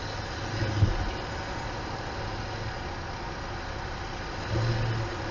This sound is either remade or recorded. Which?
recorded